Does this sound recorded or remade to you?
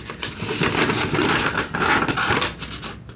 recorded